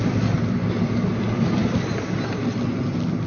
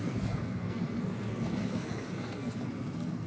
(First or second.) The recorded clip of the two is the first